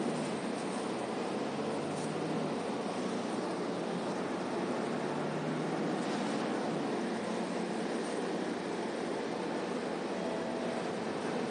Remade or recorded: recorded